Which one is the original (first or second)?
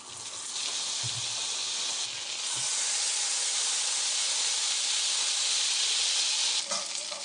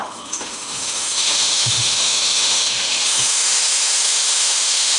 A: first